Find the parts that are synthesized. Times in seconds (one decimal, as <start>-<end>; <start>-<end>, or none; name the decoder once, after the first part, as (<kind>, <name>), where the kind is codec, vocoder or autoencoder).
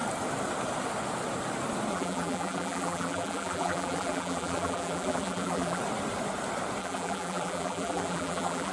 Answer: 1.9-5.8 (vocoder, BigVGAN v2); 6.8-8.7